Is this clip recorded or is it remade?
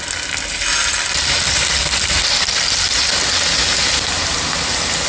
recorded